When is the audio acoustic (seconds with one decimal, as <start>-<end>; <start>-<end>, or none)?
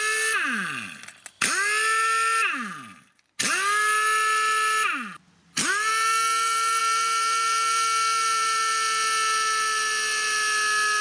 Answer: 0.0-11.0